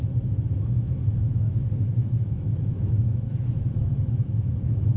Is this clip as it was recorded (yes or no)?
no